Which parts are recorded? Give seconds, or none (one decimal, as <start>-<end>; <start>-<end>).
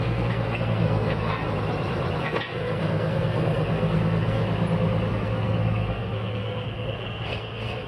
1.4-2.2; 4.4-5.1